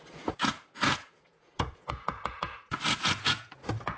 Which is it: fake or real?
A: fake